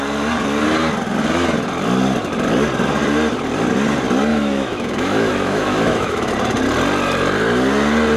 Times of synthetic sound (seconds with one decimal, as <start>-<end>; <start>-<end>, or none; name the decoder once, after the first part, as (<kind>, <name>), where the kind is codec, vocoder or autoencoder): 4.3-6.3 (autoencoder, DAC-VAE)